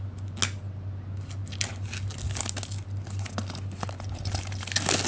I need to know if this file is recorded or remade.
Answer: recorded